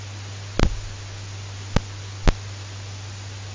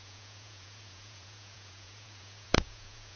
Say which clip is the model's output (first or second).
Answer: second